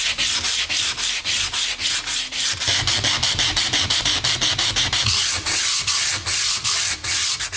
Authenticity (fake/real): real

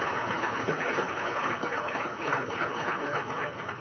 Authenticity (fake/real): fake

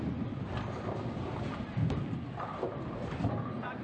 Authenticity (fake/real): real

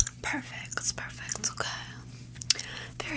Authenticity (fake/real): real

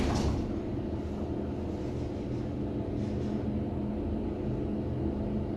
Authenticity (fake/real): real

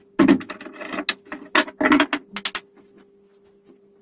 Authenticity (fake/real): real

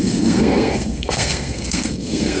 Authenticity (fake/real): fake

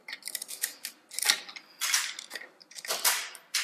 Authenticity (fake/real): real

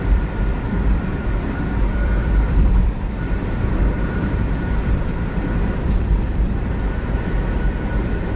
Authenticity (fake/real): fake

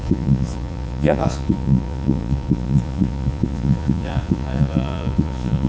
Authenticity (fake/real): fake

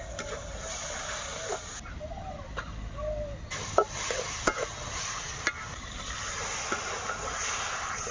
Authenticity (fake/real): real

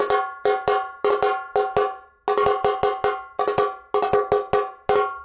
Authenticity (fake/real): real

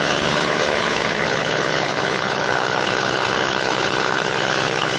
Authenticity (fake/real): fake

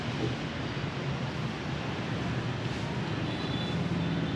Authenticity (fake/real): real